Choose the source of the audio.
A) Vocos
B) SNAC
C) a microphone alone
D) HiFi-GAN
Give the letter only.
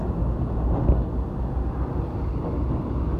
C